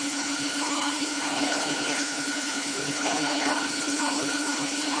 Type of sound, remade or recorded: remade